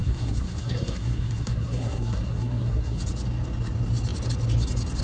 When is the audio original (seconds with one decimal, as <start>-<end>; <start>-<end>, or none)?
3.0-5.0